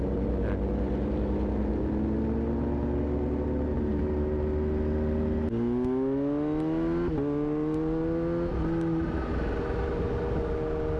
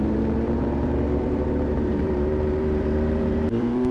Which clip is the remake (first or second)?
second